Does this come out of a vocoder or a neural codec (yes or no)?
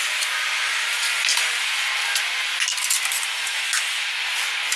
no